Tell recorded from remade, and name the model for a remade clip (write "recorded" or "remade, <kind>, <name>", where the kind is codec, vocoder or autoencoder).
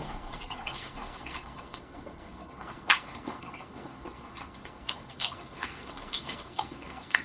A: remade, codec, SNAC